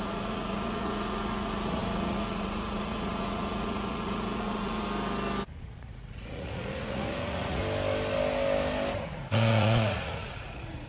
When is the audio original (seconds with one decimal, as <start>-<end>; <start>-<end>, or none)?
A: 4.8-5.6; 7.6-9.0